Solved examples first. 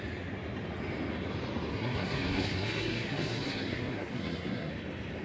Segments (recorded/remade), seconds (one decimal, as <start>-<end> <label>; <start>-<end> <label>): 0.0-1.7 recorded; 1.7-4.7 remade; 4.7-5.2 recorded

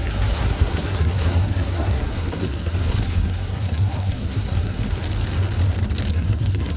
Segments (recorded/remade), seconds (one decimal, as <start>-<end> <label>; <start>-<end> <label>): 0.0-4.8 remade; 4.8-6.1 recorded; 6.1-6.8 remade

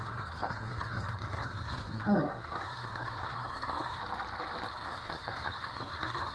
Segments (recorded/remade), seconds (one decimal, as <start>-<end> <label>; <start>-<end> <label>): 0.0-4.0 remade; 4.0-4.7 recorded; 4.7-6.3 remade